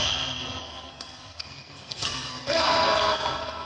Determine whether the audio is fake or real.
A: fake